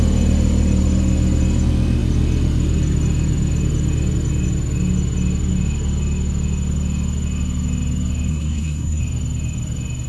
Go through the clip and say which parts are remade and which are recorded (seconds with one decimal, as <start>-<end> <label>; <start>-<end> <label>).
0.0-8.3 recorded; 8.3-9.0 remade; 9.0-10.1 recorded